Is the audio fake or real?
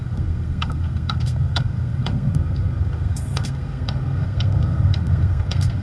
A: fake